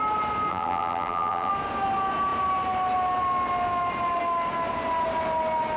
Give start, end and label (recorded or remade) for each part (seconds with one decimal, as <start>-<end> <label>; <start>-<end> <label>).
0.0-0.5 recorded; 0.5-1.5 remade; 1.5-5.8 recorded